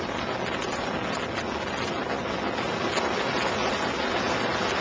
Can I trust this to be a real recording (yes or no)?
yes